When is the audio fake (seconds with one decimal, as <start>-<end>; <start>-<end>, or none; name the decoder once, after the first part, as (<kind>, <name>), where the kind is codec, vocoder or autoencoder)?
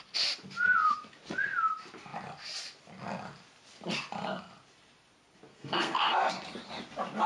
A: 5.5-6.3 (codec, SNAC)